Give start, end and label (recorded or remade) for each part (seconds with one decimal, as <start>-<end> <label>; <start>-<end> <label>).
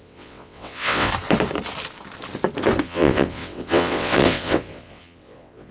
0.0-1.1 remade; 1.1-2.8 recorded; 2.8-5.7 remade